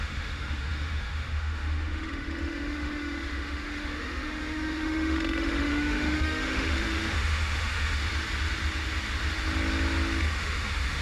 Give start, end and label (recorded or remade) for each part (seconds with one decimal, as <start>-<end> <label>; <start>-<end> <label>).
0.0-8.0 remade; 8.0-10.2 recorded; 10.2-11.0 remade